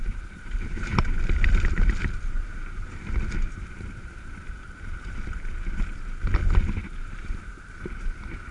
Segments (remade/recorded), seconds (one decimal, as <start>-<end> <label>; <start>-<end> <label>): 0.0-0.9 remade; 0.9-3.3 recorded; 3.3-6.4 remade; 6.4-7.0 recorded; 7.0-8.5 remade